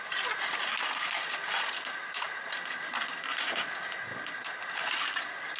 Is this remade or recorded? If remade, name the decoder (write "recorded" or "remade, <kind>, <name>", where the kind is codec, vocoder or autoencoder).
recorded